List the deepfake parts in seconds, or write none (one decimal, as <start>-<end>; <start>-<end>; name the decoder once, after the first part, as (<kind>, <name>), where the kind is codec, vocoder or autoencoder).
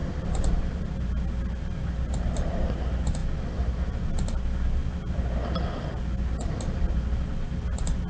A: none